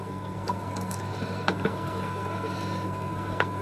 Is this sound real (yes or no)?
no